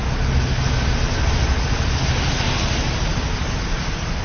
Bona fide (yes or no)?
yes